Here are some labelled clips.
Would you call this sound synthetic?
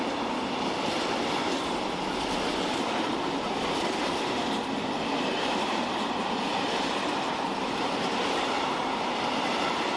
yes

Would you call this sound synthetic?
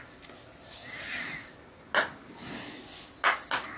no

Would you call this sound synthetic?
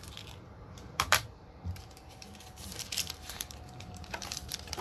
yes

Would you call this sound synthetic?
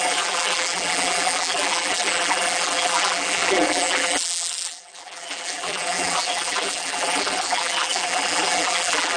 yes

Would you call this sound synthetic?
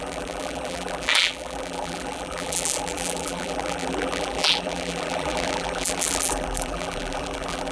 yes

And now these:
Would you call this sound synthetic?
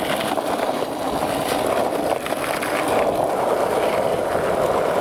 yes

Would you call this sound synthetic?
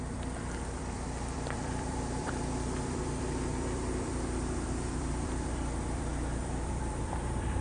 yes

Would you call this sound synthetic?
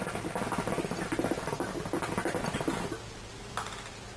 no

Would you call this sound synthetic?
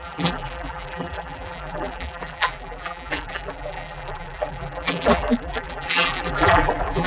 yes